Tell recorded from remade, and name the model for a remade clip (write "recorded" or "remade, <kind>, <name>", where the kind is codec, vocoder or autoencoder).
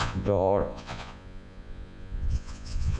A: remade, vocoder, Vocos